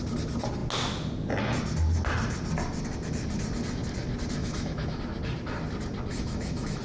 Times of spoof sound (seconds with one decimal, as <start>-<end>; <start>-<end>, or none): 4.4-5.0; 6.1-6.8